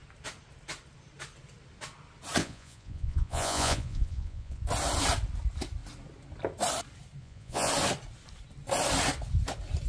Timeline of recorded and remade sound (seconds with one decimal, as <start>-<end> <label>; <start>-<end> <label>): 0.0-2.4 recorded; 2.4-4.6 remade; 4.6-7.2 recorded; 7.2-7.7 remade; 7.7-9.9 recorded